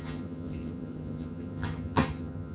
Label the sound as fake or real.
fake